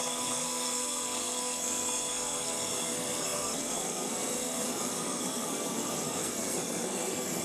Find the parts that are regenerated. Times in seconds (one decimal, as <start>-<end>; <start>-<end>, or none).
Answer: 0.0-7.4